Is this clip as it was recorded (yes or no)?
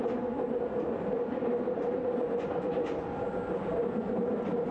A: yes